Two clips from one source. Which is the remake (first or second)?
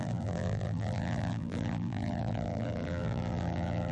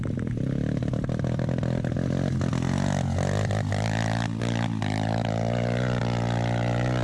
first